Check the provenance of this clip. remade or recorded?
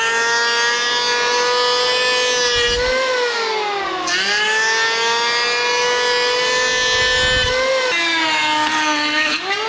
recorded